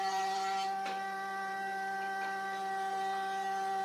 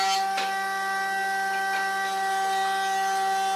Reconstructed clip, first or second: first